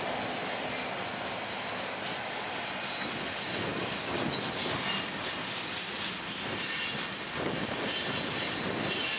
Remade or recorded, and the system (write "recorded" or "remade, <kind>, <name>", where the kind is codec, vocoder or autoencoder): recorded